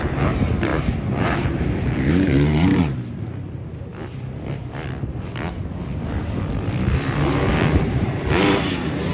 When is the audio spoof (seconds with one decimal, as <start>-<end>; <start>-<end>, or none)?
0.0-3.9; 7.5-9.1